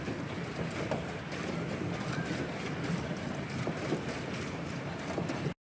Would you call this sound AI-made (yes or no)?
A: no